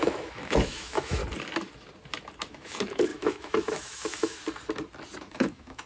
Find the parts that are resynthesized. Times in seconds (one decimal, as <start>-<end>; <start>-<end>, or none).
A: 0.0-1.2; 2.5-4.4; 5.2-5.9